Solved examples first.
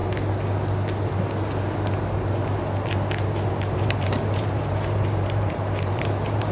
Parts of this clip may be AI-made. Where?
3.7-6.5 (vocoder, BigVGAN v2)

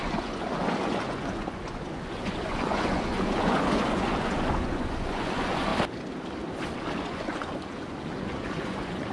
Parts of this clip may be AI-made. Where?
0.0-5.7 (vocoder, Vocos); 7.0-9.1

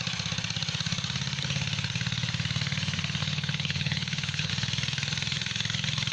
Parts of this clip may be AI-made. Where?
3.2-4.5 (codec, HILCodec)